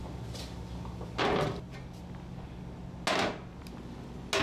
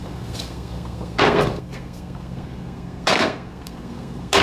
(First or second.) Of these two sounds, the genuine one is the first